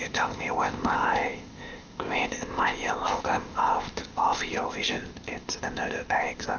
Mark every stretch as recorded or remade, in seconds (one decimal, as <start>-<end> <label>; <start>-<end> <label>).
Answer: 0.0-6.6 remade